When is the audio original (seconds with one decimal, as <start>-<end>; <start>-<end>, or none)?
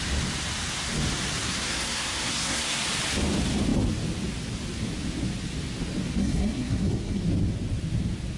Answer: 0.0-1.4; 2.8-6.2; 7.2-8.4